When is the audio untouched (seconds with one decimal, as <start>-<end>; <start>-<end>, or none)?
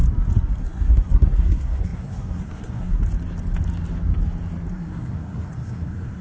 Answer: 0.0-0.6; 3.0-4.7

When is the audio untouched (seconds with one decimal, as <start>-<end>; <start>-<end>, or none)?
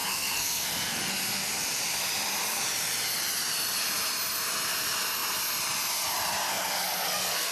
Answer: 1.1-6.4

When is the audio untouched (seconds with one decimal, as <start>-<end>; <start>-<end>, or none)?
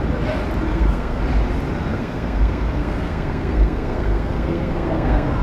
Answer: 0.0-0.7; 1.2-1.9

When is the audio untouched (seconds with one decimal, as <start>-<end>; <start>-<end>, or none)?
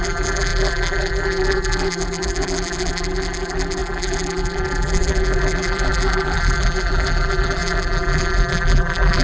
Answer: none